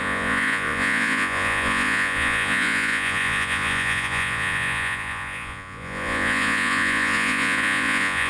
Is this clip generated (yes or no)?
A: yes